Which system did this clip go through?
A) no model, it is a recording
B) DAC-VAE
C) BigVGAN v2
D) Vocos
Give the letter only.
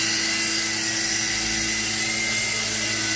A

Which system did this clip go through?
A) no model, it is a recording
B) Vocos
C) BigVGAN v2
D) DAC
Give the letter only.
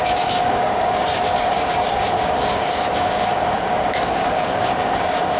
D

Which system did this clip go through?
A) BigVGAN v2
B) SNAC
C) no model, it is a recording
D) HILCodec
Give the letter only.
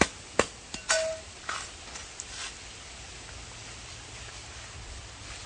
C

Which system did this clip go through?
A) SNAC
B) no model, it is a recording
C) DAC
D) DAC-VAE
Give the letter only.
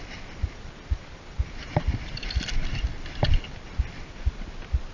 B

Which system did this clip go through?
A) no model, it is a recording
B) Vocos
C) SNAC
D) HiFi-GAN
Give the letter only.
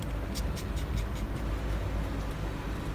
A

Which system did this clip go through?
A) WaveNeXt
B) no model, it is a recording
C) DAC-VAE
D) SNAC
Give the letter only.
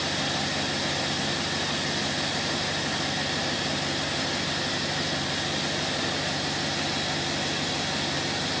B